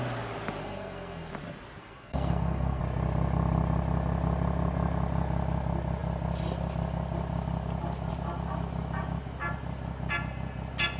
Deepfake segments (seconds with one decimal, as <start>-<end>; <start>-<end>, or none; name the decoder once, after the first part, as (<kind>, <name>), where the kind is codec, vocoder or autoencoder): 0.6-1.3 (codec, SNAC); 1.8-2.8